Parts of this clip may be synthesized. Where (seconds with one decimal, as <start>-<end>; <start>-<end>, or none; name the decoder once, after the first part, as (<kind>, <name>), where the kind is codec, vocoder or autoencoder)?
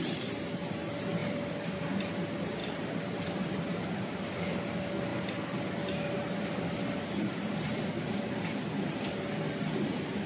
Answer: 1.2-1.8 (vocoder, BigVGAN v2)